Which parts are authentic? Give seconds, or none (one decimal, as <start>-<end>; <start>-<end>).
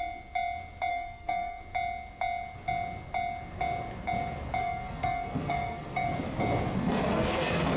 0.0-0.9; 1.6-4.6; 6.1-6.8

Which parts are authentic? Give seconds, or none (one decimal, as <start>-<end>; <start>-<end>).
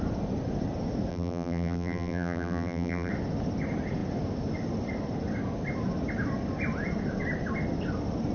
0.0-1.1; 3.1-8.3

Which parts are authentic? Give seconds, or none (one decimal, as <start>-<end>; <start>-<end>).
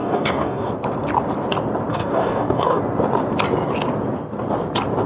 0.7-1.9; 2.8-5.1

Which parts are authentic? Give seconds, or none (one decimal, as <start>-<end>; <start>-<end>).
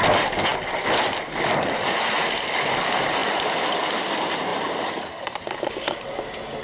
0.0-4.5; 5.7-6.6